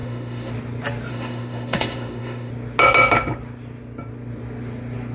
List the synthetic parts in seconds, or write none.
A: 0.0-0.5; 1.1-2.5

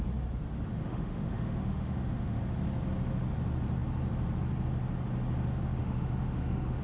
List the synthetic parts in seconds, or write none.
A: 0.7-2.4; 5.8-6.8

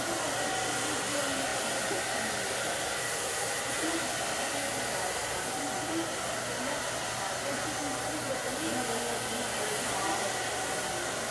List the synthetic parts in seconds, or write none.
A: none